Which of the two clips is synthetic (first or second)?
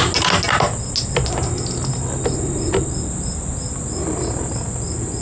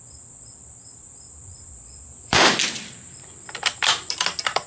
second